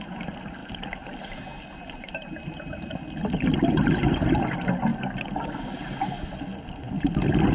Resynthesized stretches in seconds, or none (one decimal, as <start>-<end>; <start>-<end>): none